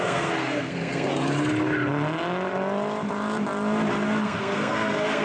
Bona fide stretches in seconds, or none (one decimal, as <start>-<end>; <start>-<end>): 1.1-4.2